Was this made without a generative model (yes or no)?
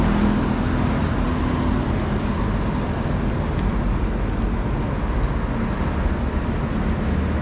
yes